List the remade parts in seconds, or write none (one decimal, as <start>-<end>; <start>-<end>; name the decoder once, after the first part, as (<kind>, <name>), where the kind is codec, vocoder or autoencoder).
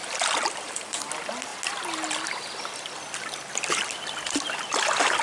0.0-1.1 (vocoder, BigVGAN v2)